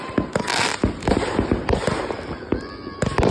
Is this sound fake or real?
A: real